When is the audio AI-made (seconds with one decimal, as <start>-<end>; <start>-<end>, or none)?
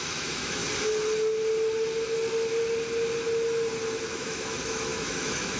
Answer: 0.0-0.6; 4.0-5.6